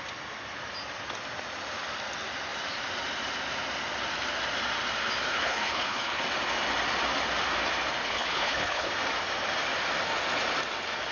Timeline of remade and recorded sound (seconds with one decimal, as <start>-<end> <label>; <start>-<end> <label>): 0.0-5.3 recorded; 5.3-6.2 remade; 6.2-8.0 recorded; 8.0-8.9 remade; 8.9-11.1 recorded